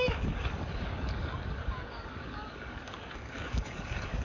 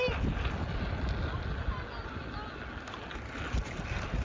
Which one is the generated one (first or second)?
first